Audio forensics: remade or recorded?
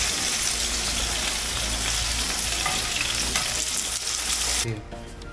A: recorded